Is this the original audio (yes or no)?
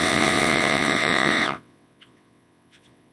no